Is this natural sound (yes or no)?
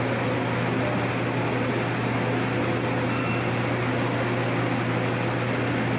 yes